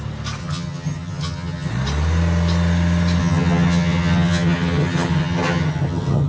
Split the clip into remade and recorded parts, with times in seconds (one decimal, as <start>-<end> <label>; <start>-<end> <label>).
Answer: 0.0-0.4 recorded; 0.4-1.7 remade; 1.7-3.2 recorded; 3.2-6.3 remade